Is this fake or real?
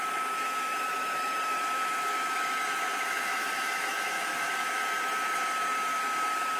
fake